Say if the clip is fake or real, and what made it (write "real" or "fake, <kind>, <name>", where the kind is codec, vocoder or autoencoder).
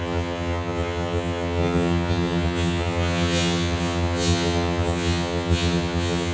fake, vocoder, HiFi-GAN